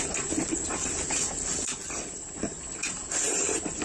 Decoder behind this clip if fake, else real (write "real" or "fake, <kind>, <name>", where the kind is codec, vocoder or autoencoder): fake, vocoder, BigVGAN v2